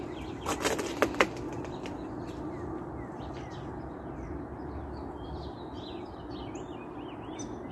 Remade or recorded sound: recorded